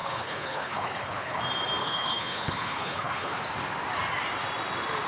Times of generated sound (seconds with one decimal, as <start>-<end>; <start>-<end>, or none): 0.0-1.4; 1.8-3.4